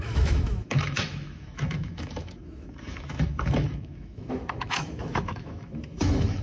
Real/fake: fake